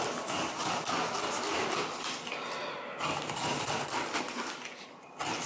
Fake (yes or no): no